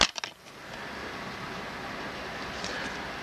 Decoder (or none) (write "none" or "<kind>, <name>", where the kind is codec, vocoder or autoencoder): none